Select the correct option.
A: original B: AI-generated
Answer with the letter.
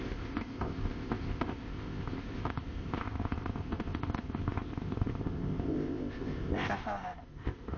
B